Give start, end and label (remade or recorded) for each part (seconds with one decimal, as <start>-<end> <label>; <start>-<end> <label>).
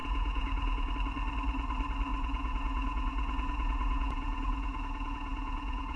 0.0-0.9 remade; 0.9-2.1 recorded; 2.1-6.0 remade